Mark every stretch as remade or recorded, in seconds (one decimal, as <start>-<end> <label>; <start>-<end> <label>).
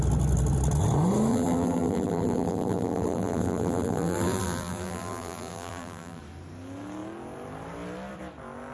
0.0-1.3 recorded; 1.3-6.2 remade; 6.2-8.7 recorded